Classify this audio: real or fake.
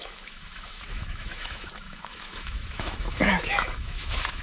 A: fake